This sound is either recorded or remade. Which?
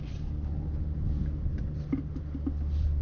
recorded